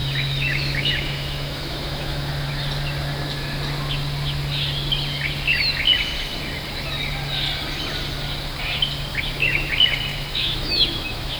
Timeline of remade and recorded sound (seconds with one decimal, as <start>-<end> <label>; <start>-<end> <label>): 0.0-2.3 remade; 2.3-9.1 recorded; 9.1-9.7 remade; 9.7-10.1 recorded; 10.1-11.4 remade